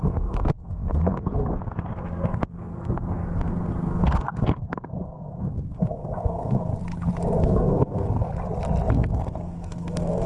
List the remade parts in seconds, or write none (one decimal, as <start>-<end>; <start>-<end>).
0.0-6.7; 7.4-8.3; 8.9-10.3

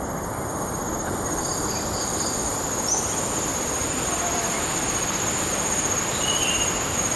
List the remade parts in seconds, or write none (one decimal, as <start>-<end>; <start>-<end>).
none

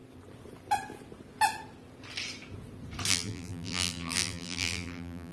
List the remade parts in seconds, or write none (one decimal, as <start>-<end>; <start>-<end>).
3.1-5.3

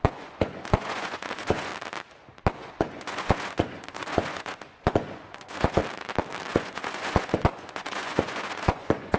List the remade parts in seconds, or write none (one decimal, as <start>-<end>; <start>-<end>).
0.0-1.7; 2.7-5.8; 6.5-9.2

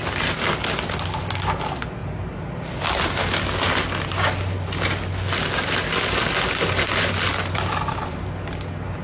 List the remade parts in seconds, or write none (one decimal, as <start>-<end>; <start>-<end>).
none

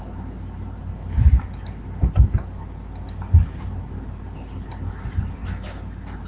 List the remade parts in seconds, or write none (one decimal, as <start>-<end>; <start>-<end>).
none